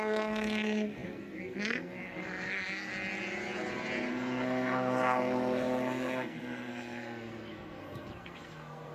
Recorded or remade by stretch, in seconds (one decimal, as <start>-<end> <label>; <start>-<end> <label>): 0.0-2.9 remade; 2.9-4.1 recorded; 4.1-8.9 remade